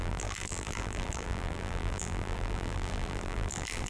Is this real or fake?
fake